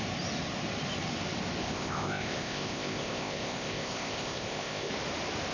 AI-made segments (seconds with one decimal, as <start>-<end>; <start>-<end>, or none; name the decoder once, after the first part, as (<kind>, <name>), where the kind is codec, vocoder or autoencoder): 1.6-4.9 (codec, ZipCodec)